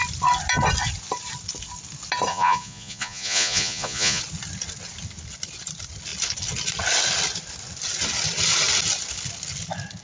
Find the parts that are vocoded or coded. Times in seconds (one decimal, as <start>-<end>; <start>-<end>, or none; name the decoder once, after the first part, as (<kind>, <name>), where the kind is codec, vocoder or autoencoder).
2.3-4.2 (vocoder, Vocos)